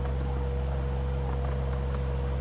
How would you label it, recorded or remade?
recorded